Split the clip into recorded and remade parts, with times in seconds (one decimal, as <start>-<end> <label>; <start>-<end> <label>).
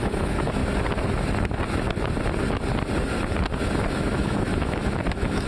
0.0-0.6 remade; 0.6-3.9 recorded; 3.9-5.5 remade